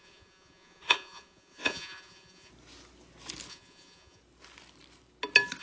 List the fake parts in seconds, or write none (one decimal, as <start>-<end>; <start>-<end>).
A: 0.0-2.5; 3.5-4.2